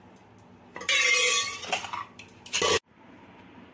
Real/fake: real